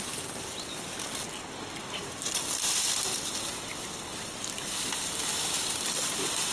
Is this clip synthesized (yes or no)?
no